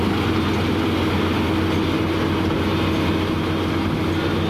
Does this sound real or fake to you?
real